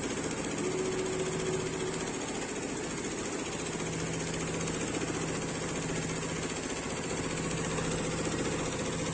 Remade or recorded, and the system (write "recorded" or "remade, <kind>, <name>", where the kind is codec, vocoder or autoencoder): recorded